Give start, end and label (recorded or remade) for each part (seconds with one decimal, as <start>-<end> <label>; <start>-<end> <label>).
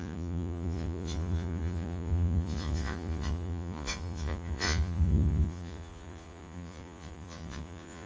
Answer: 0.0-8.1 remade